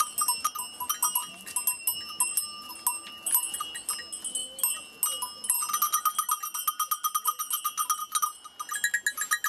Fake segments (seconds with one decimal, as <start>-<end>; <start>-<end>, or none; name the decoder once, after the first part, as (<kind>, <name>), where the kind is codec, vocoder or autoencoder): none